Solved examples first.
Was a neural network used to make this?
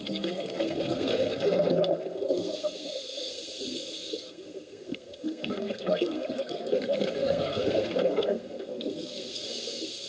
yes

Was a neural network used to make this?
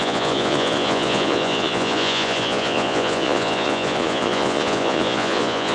yes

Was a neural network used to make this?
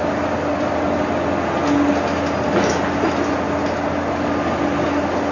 no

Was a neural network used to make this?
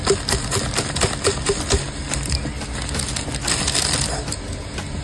no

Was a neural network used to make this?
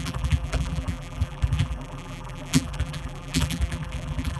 yes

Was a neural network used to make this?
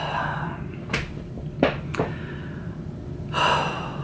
no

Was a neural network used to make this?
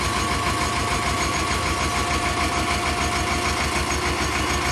no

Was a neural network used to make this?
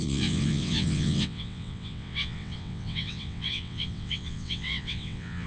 yes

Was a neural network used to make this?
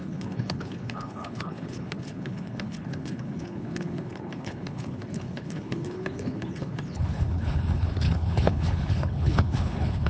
yes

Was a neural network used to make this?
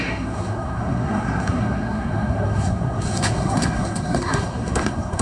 yes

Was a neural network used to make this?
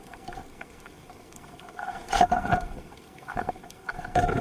yes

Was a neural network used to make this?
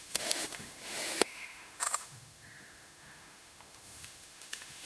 yes